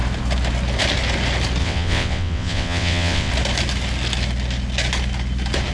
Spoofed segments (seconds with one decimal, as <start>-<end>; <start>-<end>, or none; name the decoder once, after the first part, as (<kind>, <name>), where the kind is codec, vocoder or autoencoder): 1.6-3.3 (vocoder, WaveNeXt)